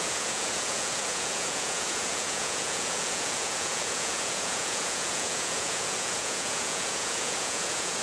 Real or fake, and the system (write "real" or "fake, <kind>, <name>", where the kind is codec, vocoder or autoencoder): fake, vocoder, Vocos